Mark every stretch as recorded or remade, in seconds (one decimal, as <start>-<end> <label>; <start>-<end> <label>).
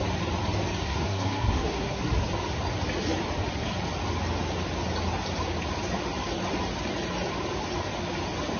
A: 0.0-0.8 recorded; 0.8-2.0 remade; 2.0-8.6 recorded